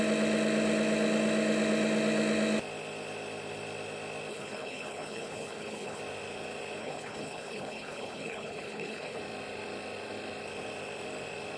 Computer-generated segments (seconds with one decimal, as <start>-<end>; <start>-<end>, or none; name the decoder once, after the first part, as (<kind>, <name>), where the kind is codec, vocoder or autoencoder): 4.3-6.0 (codec, HILCodec); 6.8-9.2